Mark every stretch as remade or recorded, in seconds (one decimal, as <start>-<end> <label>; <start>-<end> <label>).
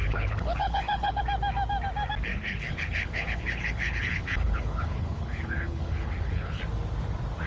0.0-1.2 remade; 1.2-2.3 recorded; 2.3-6.6 remade; 6.6-7.5 recorded